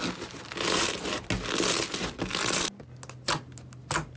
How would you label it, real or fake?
real